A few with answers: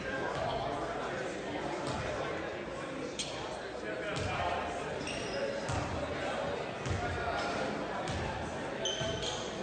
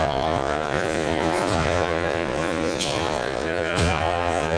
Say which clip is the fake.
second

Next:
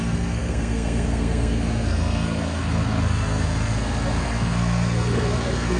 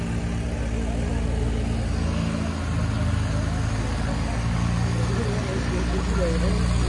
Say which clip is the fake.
first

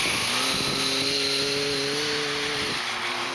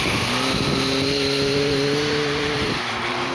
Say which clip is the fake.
second